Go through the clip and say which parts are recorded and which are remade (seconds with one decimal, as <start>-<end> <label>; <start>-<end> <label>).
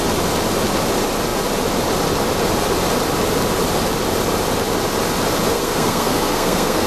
0.0-5.5 recorded; 5.5-6.9 remade